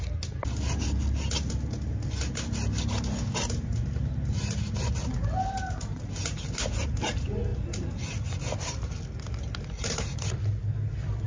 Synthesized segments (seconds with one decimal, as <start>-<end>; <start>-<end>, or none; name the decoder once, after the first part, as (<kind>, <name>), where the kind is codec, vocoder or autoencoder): 7.5-9.0 (vocoder, BigVGAN v2)